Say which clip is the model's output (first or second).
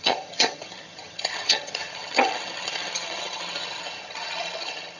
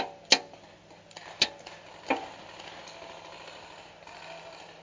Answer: first